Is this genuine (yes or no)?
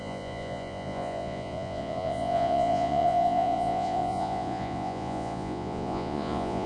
no